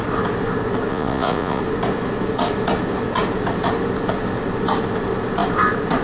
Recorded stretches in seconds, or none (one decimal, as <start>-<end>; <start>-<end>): 0.0-0.9; 1.6-6.0